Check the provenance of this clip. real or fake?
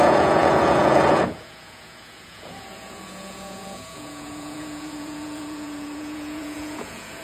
fake